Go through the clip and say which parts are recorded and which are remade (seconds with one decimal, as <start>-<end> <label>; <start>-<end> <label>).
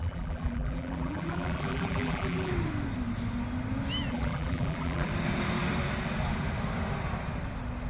0.0-2.5 remade; 2.5-4.1 recorded; 4.1-5.1 remade; 5.1-7.9 recorded